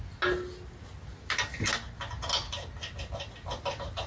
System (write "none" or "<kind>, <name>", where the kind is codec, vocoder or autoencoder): none